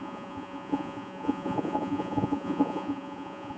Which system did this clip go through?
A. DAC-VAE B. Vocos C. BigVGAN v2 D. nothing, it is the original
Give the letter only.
B